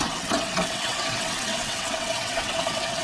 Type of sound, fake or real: fake